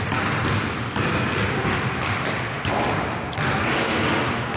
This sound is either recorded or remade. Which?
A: recorded